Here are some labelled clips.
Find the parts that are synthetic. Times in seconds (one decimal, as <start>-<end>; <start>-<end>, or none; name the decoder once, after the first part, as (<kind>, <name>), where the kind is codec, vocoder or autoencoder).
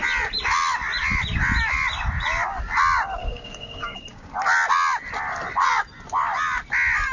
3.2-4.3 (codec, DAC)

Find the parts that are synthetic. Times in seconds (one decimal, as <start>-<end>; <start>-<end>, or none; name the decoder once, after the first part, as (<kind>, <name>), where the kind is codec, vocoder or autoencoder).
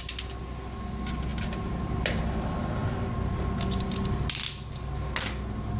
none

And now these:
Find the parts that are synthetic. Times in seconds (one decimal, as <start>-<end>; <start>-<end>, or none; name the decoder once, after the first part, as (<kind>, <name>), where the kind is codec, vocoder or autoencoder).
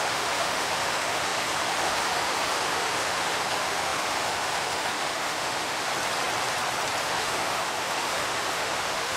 0.0-5.9 (autoencoder, DAC-VAE); 7.0-9.2